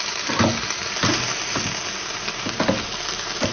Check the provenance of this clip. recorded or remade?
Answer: recorded